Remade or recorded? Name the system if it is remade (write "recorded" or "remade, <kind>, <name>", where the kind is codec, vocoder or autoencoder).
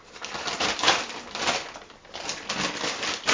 recorded